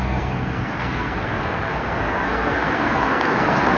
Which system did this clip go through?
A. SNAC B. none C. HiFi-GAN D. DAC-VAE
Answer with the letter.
A